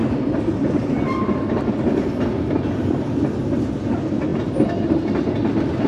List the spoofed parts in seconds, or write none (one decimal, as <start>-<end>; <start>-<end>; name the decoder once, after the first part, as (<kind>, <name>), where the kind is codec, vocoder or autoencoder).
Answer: none

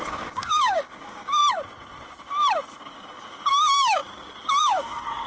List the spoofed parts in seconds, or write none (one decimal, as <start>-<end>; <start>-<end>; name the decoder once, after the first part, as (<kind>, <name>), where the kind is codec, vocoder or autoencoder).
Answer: 0.0-1.4 (codec, DAC); 2.8-5.3